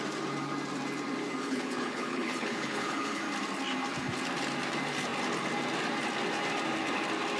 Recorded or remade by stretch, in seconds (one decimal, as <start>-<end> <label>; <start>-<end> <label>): 0.0-1.4 recorded; 1.4-3.2 remade; 3.2-7.4 recorded